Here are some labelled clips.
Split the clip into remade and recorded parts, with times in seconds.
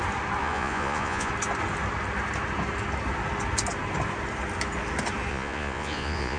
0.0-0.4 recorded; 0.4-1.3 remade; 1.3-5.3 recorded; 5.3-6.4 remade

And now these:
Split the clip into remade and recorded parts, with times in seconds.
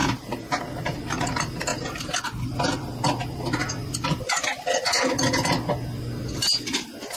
0.0-0.6 remade; 0.6-1.7 recorded; 1.7-2.2 remade; 2.2-3.8 recorded; 3.8-4.5 remade; 4.5-7.2 recorded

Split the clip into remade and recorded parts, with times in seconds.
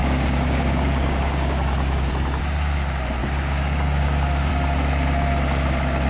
0.0-2.1 remade; 2.1-3.2 recorded; 3.2-4.5 remade; 4.5-6.1 recorded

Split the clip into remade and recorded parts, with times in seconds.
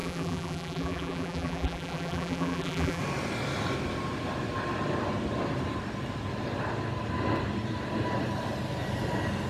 0.0-3.0 remade; 3.0-9.5 recorded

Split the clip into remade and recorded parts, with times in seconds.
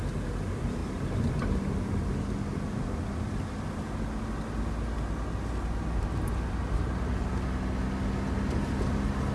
0.0-9.3 recorded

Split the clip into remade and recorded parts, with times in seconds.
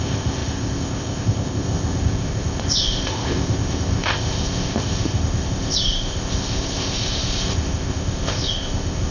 0.0-9.1 remade